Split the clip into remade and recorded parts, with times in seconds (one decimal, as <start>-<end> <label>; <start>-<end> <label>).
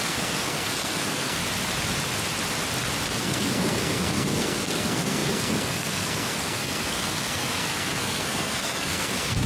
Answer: 0.0-1.4 remade; 1.4-3.2 recorded; 3.2-9.5 remade